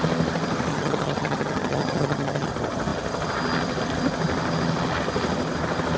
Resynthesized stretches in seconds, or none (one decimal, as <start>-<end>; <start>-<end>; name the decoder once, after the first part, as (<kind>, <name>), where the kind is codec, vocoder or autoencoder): 0.7-2.5 (vocoder, HiFi-GAN)